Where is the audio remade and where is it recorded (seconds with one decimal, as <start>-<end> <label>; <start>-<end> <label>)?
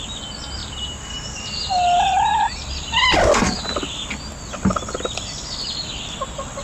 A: 0.0-0.6 recorded; 0.6-1.4 remade; 1.4-6.6 recorded